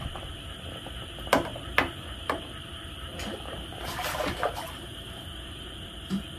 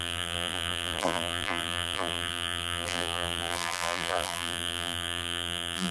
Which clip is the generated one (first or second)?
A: second